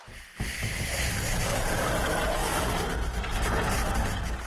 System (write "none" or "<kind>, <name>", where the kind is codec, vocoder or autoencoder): none